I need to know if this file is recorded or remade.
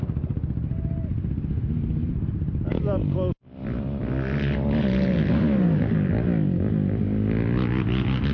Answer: recorded